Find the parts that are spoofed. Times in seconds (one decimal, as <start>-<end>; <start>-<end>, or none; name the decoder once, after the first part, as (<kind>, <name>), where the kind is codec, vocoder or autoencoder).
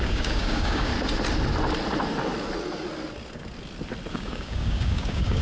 0.0-0.9 (codec, DAC); 4.1-5.4